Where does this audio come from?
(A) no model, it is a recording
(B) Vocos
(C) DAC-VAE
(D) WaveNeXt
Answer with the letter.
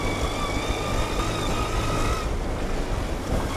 A